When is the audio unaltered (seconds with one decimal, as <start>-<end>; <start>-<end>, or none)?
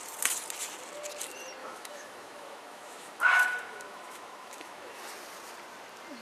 0.0-1.6; 5.0-6.2